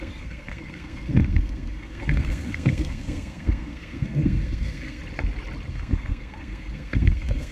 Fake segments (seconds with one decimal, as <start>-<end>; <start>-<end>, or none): 0.0-5.0; 5.7-7.5